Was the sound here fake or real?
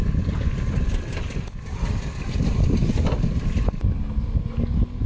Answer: real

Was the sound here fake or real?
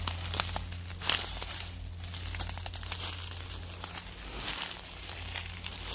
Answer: real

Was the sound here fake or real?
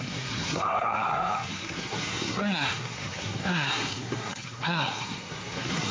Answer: fake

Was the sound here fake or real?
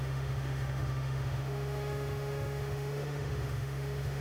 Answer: fake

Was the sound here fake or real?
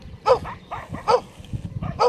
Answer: real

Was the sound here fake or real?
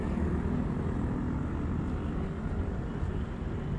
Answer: real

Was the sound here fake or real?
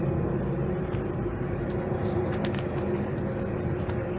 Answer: fake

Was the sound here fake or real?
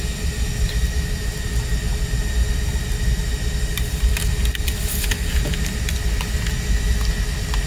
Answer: real